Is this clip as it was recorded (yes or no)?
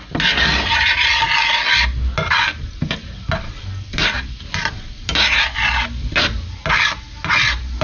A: yes